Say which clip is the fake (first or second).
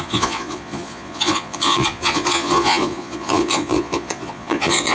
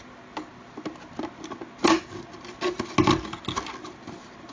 first